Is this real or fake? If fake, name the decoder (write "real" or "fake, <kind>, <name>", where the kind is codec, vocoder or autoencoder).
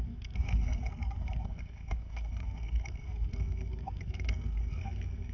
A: fake, codec, SNAC